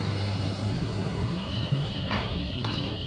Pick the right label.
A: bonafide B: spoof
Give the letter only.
B